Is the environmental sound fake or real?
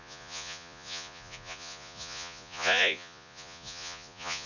fake